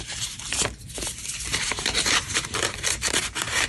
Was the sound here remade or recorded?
remade